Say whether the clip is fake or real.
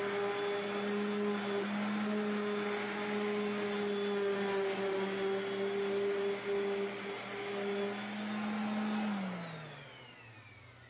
real